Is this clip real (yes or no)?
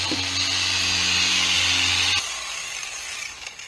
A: yes